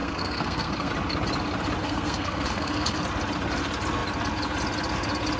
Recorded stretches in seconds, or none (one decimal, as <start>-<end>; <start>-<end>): 0.9-1.8; 3.0-5.4